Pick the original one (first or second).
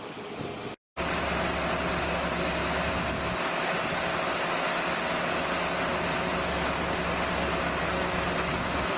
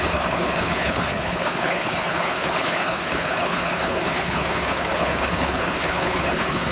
first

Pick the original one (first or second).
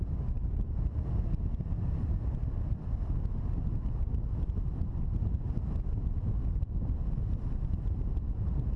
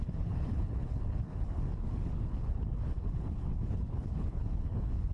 first